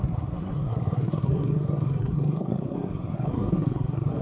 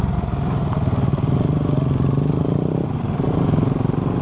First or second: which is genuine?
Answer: second